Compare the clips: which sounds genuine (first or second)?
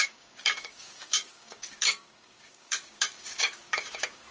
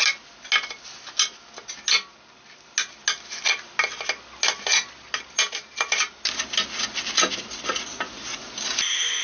second